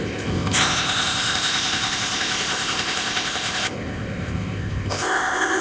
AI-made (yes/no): yes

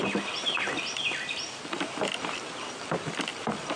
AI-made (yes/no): no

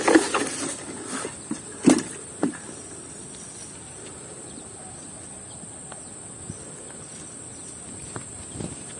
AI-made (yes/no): no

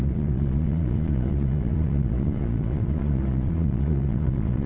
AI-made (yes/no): yes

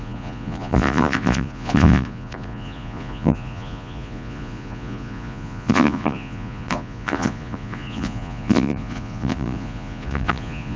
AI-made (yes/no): yes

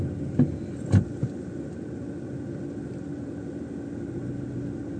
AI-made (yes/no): no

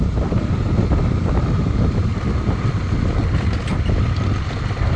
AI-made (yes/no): no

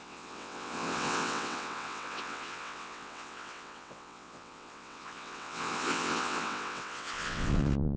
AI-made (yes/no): yes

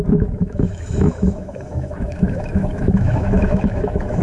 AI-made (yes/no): yes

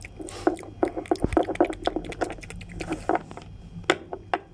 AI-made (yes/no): no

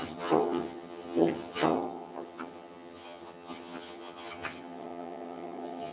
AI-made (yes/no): yes